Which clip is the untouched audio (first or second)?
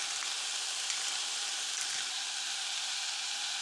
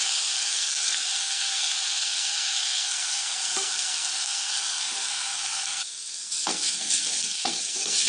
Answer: first